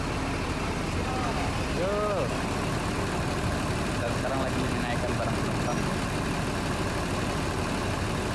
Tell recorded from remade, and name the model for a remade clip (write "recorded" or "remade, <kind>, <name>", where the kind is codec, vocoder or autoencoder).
recorded